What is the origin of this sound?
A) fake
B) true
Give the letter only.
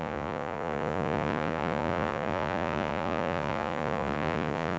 A